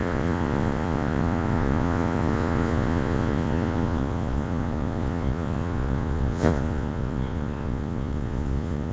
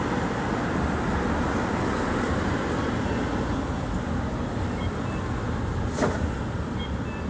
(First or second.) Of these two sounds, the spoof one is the first